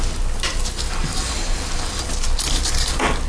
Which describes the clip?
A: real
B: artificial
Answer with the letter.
A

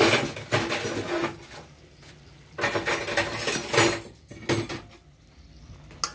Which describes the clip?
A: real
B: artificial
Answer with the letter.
A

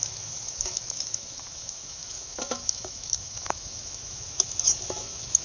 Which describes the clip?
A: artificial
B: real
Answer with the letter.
A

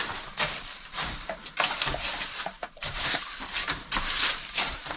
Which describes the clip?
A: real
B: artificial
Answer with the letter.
B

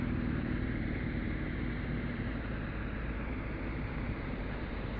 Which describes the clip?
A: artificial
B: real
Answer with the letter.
A